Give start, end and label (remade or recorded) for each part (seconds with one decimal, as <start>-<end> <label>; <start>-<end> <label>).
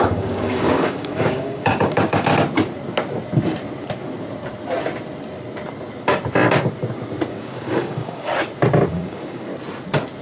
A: 0.0-2.3 remade; 2.3-7.3 recorded; 7.3-8.3 remade; 8.3-8.9 recorded; 8.9-9.5 remade; 9.5-10.2 recorded